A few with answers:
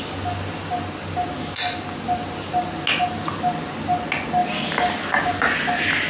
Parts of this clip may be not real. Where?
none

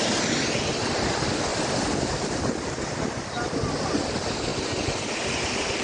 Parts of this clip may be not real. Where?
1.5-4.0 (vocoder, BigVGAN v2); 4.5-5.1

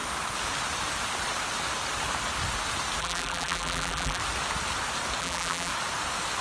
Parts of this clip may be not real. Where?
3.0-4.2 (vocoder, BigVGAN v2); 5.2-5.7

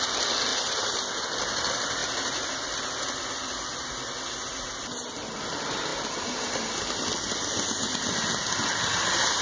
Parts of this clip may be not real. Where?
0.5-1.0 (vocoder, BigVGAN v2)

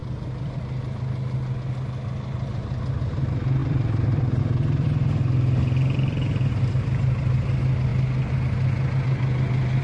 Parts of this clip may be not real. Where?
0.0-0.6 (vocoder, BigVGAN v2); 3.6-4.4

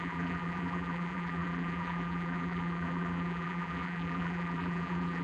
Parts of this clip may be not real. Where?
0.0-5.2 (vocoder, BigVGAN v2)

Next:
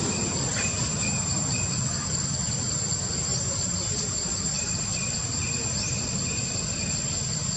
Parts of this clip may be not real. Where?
0.5-1.6 (vocoder, BigVGAN v2); 3.3-7.6